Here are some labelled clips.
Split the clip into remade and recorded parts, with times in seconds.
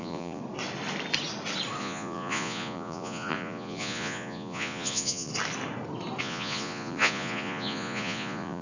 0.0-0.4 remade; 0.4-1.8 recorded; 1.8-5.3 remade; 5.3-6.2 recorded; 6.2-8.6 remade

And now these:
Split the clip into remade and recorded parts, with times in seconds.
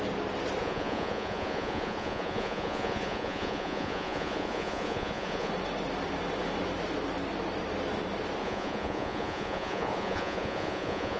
0.0-0.6 recorded; 0.6-5.5 remade; 5.5-8.4 recorded; 8.4-11.2 remade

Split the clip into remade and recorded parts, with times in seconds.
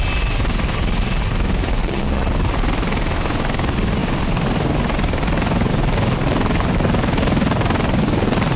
0.0-1.8 recorded; 1.8-2.3 remade; 2.3-8.6 recorded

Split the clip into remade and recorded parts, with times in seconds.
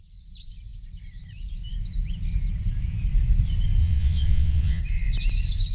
0.0-3.8 recorded; 3.8-4.8 remade; 4.8-5.7 recorded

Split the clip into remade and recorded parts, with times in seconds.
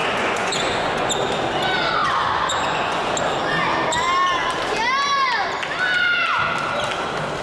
0.0-1.1 remade; 1.1-2.0 recorded; 2.0-3.1 remade; 3.1-7.4 recorded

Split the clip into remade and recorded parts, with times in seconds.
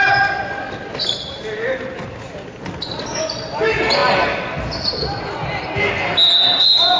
0.0-7.0 recorded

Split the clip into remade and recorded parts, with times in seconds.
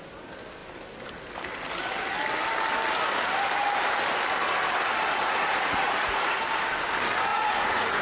0.0-5.2 recorded; 5.2-6.4 remade; 6.4-7.3 recorded; 7.3-8.0 remade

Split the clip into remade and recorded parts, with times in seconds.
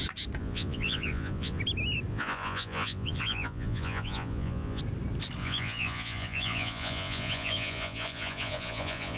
0.0-0.4 recorded; 0.4-1.6 remade; 1.6-2.1 recorded; 2.1-4.8 remade; 4.8-5.4 recorded; 5.4-9.2 remade